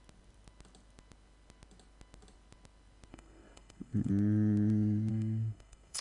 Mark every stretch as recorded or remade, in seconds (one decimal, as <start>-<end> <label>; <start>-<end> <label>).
0.0-3.1 recorded; 3.1-4.1 remade; 4.1-5.1 recorded; 5.1-6.0 remade